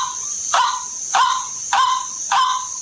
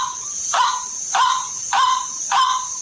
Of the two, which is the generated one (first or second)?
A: second